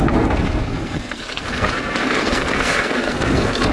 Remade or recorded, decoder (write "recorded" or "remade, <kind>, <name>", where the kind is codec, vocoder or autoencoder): remade, codec, SNAC